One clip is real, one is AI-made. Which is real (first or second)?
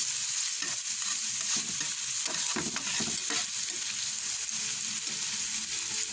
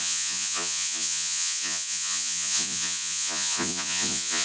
first